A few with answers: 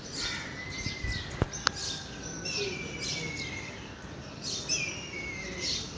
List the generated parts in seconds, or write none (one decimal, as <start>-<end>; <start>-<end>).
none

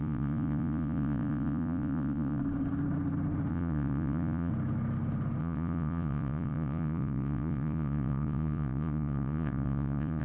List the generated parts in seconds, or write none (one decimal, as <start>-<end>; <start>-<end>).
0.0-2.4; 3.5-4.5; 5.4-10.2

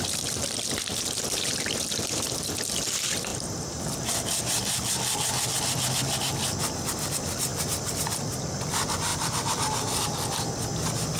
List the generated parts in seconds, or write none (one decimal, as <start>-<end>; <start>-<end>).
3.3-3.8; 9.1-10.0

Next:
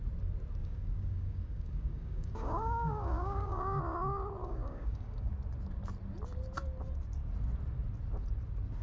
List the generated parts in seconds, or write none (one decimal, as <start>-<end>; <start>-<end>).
0.6-3.8; 4.4-5.3

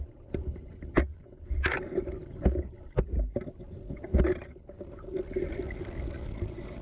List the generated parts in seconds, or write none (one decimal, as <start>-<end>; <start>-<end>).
none

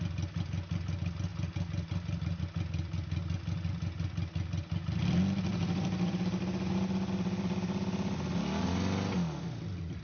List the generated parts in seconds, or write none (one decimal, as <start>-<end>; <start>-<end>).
5.5-6.2